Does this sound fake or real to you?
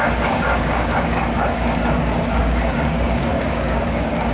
fake